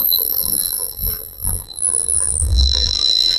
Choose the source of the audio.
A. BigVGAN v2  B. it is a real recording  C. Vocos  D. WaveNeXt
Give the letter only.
A